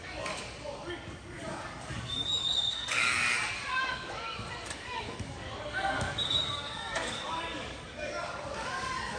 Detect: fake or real fake